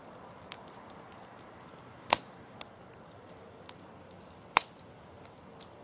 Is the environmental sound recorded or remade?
recorded